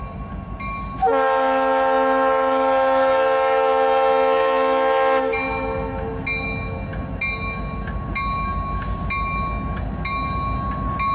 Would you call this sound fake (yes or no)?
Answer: no